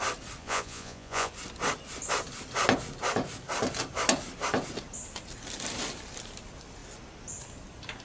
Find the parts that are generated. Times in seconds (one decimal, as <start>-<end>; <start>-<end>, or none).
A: 0.4-1.3